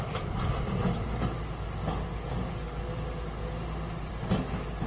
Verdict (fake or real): real